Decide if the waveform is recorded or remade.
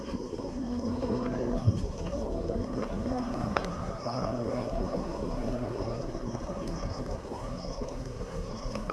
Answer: remade